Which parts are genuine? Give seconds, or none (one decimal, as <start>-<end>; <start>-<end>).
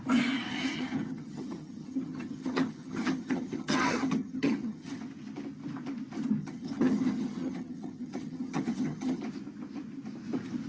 0.0-0.5; 5.0-6.4; 9.2-10.7